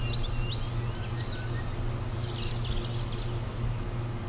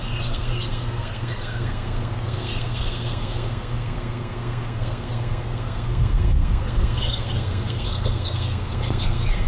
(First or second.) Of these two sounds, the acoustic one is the first